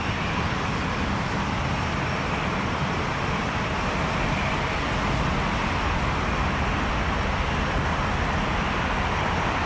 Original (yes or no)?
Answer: yes